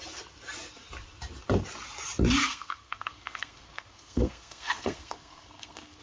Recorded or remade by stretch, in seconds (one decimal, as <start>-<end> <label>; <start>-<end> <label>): 0.0-2.4 recorded; 2.4-6.0 remade